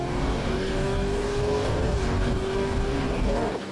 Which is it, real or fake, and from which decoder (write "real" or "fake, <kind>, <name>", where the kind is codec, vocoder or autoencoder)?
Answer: fake, codec, DAC